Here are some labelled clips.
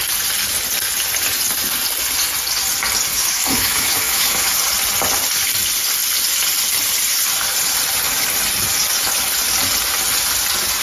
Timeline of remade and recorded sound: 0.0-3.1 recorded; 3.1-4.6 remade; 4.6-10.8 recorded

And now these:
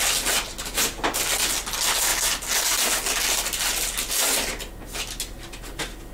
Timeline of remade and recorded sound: 0.0-6.1 recorded

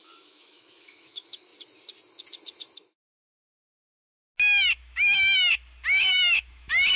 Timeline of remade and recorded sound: 0.0-1.5 remade; 1.5-4.8 recorded; 4.8-5.5 remade; 5.5-6.0 recorded; 6.0-7.0 remade

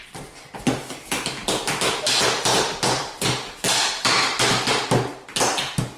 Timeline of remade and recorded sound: 0.0-6.0 recorded

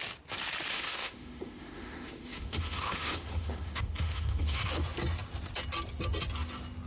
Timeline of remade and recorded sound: 0.0-0.7 recorded; 0.7-4.8 remade; 4.8-6.9 recorded

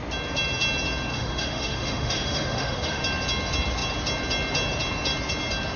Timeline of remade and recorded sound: 0.0-1.1 recorded; 1.1-3.0 remade; 3.0-5.8 recorded

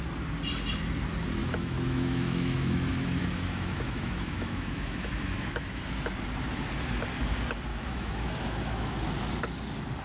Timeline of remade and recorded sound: 0.0-1.4 recorded; 1.4-6.1 remade; 6.1-7.7 recorded; 7.7-9.1 remade; 9.1-10.0 recorded

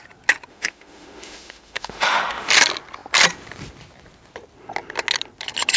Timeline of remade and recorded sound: 0.0-0.5 recorded; 0.5-2.5 remade; 2.5-5.8 recorded